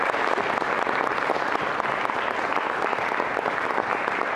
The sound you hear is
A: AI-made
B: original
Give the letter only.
B